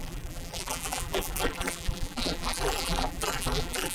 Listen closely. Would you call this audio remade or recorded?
remade